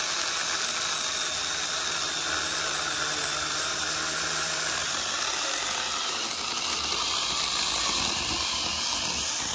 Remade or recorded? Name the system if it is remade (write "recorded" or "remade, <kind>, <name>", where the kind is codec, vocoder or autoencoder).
recorded